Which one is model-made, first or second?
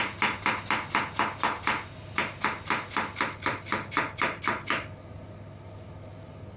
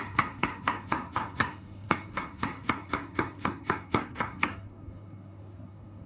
second